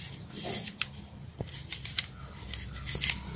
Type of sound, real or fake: real